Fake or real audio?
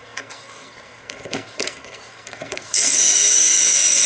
fake